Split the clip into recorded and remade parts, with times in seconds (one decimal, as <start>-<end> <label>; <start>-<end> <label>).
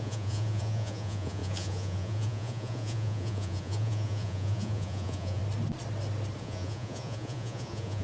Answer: 0.0-5.4 remade; 5.4-6.4 recorded; 6.4-8.0 remade